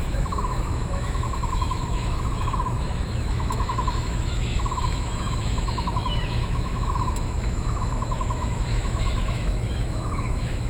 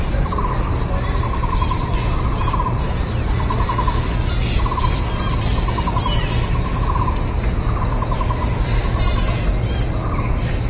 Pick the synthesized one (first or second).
first